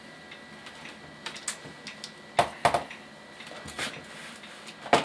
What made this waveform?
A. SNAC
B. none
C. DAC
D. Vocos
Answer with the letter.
B